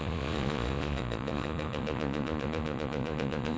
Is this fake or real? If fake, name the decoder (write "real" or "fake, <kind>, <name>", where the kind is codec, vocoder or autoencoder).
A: fake, vocoder, Vocos